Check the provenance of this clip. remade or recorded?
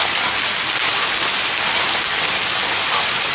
recorded